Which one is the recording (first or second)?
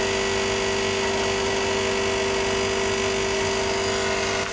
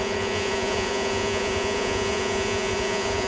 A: first